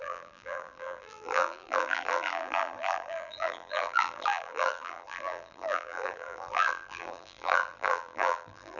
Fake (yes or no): yes